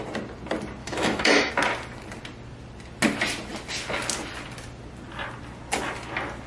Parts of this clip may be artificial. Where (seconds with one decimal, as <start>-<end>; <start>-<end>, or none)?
0.8-1.5